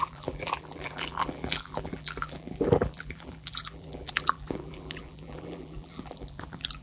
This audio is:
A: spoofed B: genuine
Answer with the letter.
A